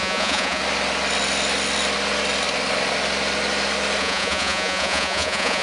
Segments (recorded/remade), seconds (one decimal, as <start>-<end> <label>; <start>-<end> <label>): 0.0-0.6 remade; 0.6-4.0 recorded; 4.0-5.6 remade